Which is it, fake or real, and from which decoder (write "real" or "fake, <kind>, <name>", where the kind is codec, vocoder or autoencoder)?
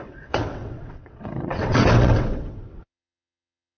fake, vocoder, WaveNeXt